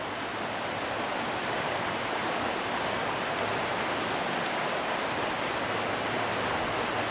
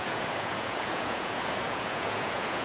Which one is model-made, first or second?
second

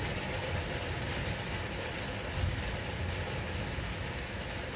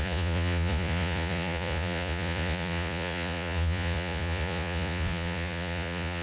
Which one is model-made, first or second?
second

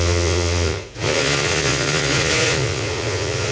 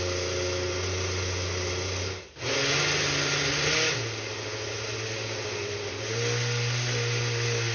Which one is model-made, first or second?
first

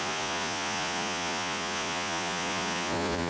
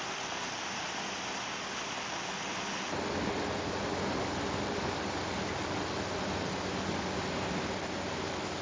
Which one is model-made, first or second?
first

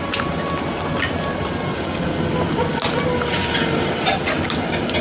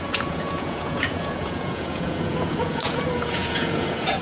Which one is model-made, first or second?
second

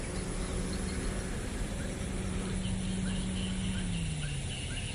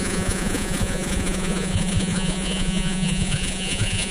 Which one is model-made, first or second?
second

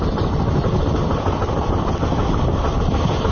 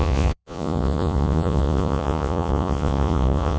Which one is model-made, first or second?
second